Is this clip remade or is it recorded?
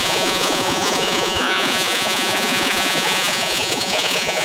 remade